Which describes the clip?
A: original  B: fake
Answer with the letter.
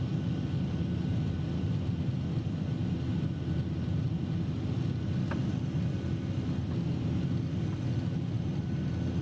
A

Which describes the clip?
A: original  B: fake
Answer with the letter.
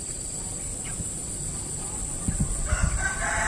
A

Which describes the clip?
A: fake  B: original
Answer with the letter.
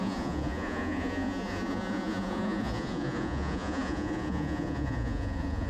A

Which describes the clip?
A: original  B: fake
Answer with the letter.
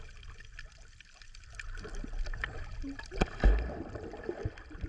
A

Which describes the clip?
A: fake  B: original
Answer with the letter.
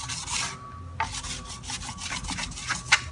B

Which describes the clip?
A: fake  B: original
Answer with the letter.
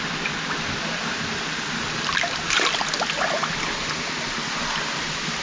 B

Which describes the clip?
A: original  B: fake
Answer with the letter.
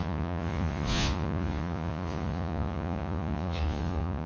B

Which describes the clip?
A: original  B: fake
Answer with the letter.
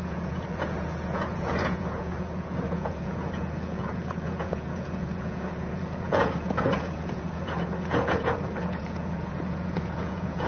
B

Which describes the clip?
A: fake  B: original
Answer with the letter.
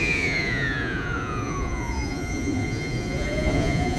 A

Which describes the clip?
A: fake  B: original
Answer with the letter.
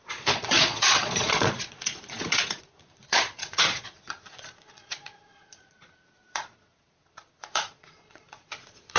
A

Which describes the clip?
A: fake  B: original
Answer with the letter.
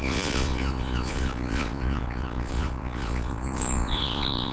A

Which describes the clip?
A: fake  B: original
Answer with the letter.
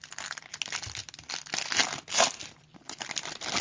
B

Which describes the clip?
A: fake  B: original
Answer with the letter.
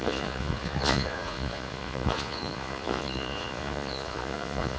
A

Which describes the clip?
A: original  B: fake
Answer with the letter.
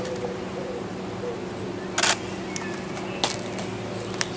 A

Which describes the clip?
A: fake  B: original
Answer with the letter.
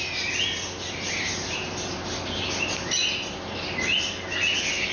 B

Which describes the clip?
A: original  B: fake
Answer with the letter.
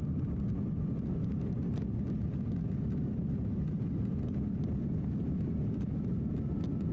A